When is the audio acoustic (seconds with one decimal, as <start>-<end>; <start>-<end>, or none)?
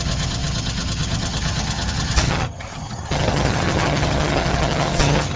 none